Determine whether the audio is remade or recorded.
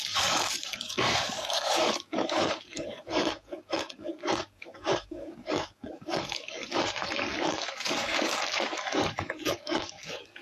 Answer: remade